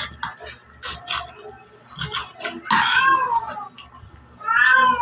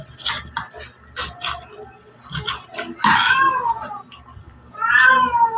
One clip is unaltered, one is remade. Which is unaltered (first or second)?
first